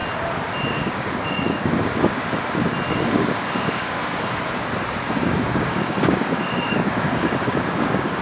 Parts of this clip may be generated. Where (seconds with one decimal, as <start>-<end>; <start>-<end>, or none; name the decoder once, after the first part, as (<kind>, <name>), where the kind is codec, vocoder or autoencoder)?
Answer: 0.6-2.2 (codec, DAC); 2.9-4.0; 5.2-8.2

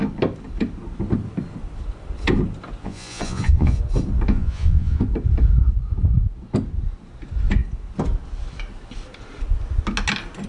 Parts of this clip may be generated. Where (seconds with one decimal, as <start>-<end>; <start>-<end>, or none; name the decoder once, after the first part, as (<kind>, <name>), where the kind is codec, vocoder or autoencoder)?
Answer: 2.8-3.8 (vocoder, Vocos); 4.3-5.0

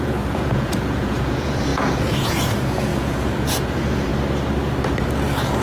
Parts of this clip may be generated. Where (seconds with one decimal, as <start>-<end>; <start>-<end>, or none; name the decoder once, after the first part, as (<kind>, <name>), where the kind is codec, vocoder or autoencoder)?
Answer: 0.0-4.1 (vocoder, Vocos)

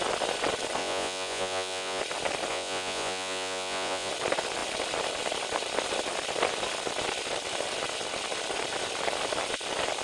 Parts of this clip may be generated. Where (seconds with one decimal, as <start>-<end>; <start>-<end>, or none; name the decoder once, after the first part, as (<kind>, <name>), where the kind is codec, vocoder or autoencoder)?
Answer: 0.8-2.0 (vocoder, Vocos); 2.5-4.1

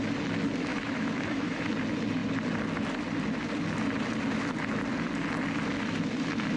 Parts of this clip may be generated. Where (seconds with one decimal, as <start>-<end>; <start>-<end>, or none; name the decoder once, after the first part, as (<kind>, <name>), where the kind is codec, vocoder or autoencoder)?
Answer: 0.7-1.7 (autoencoder, DAC-VAE)

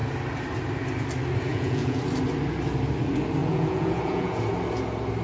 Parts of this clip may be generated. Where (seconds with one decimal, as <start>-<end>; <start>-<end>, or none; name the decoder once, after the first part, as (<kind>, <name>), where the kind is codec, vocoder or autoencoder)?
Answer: 1.5-2.0 (vocoder, Vocos); 3.4-4.4